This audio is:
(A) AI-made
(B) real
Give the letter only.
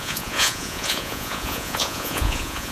A